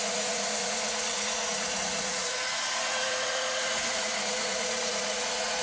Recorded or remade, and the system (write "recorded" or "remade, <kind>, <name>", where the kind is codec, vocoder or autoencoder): remade, vocoder, Vocos